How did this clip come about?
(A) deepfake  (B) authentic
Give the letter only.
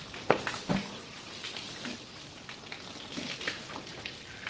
B